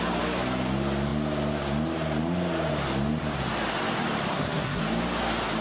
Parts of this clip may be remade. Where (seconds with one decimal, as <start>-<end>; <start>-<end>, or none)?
4.3-4.8